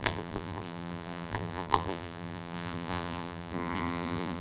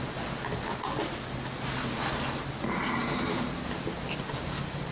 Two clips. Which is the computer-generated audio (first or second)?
first